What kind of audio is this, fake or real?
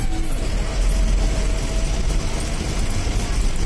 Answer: real